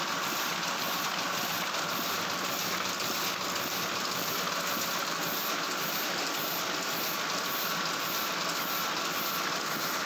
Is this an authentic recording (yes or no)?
yes